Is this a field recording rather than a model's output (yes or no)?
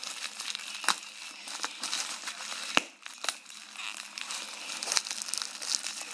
yes